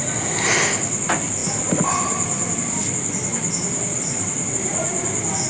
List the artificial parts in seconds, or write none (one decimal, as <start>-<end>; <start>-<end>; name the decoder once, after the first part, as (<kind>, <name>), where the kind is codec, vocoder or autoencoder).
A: none